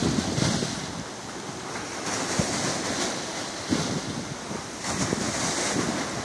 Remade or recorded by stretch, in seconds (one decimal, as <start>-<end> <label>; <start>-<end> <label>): 0.0-6.2 recorded